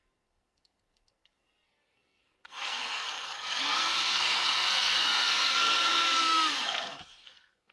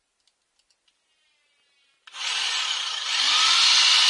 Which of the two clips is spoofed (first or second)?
first